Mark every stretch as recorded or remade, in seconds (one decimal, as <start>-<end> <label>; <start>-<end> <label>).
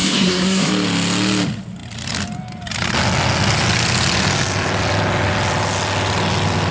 0.0-0.7 remade; 0.7-6.7 recorded